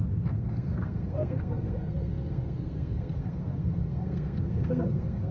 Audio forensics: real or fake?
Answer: fake